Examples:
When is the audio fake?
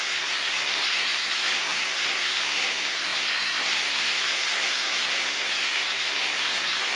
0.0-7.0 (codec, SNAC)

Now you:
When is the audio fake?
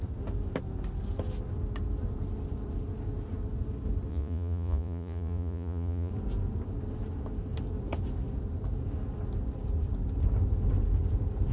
4.1-6.1 (vocoder, Vocos)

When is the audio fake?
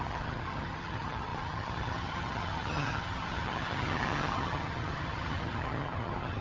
0.0-6.4 (vocoder, HiFi-GAN)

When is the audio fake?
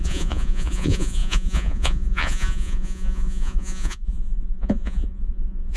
0.0-5.8 (vocoder, Vocos)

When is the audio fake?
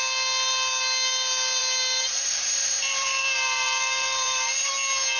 1.6-4.7 (vocoder, BigVGAN v2)